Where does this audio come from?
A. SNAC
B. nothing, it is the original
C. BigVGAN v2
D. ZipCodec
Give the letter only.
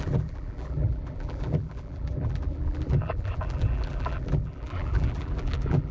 C